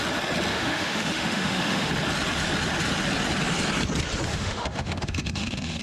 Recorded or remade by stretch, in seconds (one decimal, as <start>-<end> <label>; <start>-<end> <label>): 0.0-0.5 recorded; 0.5-1.9 remade; 1.9-4.3 recorded; 4.3-5.8 remade

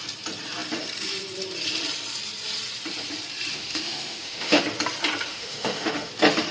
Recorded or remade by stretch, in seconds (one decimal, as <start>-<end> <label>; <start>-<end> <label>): 0.0-3.5 recorded; 3.5-4.6 remade; 4.6-5.3 recorded; 5.3-6.1 remade; 6.1-6.5 recorded

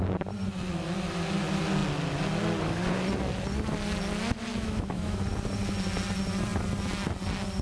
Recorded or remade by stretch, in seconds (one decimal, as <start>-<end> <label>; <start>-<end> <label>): 0.0-4.5 recorded; 4.5-5.2 remade; 5.2-7.6 recorded

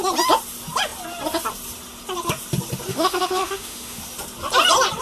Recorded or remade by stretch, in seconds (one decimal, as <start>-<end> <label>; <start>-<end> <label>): 0.0-2.9 recorded; 2.9-4.0 remade; 4.0-5.0 recorded

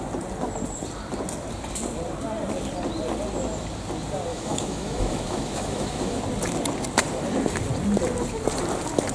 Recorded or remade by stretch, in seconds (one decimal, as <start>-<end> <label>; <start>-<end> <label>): 0.0-4.3 recorded; 4.3-6.2 remade; 6.2-9.1 recorded

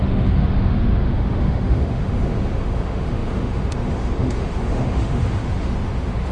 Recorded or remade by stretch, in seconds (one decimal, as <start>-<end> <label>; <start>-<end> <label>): 0.0-6.3 remade